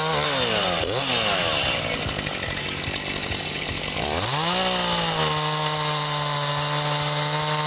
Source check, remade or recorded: recorded